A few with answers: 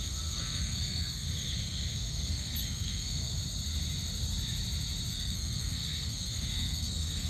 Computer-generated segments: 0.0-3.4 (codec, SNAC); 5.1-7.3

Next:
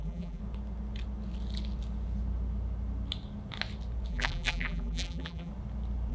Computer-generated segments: 0.0-0.4 (vocoder, BigVGAN v2); 4.1-5.5

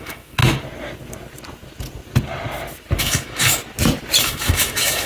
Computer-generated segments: 0.0-0.4 (autoencoder, DAC-VAE); 3.0-3.6; 4.2-5.1

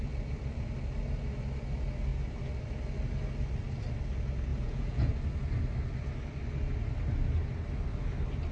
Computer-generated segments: 4.5-5.1 (vocoder, Vocos)

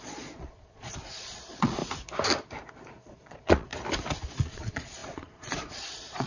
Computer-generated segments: 0.0-1.8 (vocoder, Vocos); 2.9-3.7; 4.2-6.3